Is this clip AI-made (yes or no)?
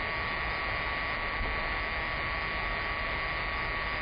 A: no